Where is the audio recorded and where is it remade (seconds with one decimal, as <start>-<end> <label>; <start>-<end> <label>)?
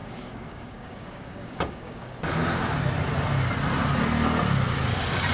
0.0-2.1 remade; 2.1-5.3 recorded